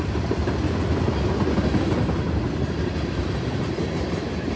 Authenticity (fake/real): real